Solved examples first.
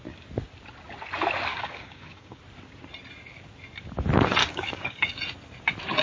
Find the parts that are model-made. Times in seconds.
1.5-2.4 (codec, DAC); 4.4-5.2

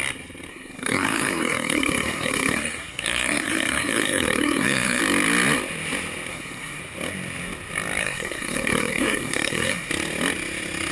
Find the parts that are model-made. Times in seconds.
0.5-5.0 (codec, SNAC); 6.3-6.8; 8.0-9.9

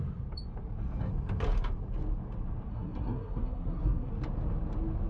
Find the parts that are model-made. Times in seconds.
2.7-4.1 (codec, SNAC)

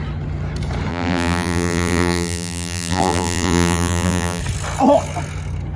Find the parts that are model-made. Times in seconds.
0.9-4.4 (vocoder, BigVGAN v2)

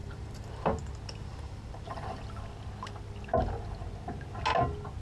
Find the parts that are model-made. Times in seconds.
0.0-0.5 (vocoder, BigVGAN v2); 1.3-2.2

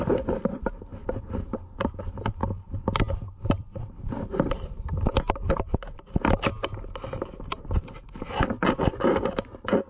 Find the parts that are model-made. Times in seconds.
0.9-2.0 (vocoder, BigVGAN v2)

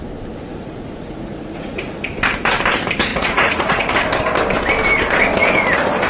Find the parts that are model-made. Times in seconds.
0.5-2.0 (vocoder, Vocos); 3.1-3.9